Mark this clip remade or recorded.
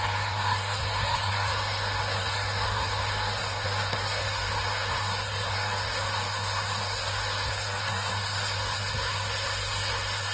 remade